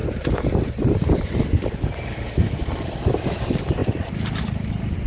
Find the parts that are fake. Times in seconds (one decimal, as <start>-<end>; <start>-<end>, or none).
none